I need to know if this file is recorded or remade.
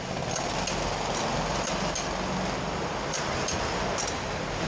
recorded